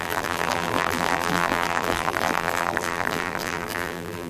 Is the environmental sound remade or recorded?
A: remade